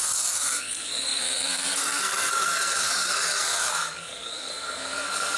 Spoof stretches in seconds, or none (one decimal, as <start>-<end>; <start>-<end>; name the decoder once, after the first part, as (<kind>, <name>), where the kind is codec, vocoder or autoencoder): 0.0-5.4 (codec, SNAC)

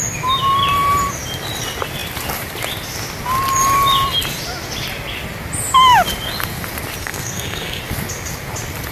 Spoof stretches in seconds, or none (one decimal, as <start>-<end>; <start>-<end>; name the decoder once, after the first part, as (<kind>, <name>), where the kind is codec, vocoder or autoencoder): 7.0-7.8 (codec, SNAC)

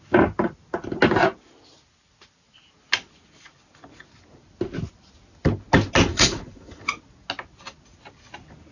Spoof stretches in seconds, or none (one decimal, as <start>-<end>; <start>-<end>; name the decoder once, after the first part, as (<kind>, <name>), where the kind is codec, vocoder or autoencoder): 6.1-6.8 (vocoder, Vocos)